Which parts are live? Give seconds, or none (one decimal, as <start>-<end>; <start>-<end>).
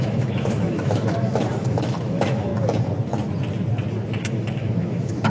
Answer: 2.5-4.2